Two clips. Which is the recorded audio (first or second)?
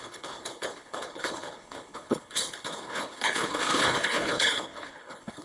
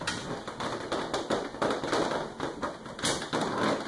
second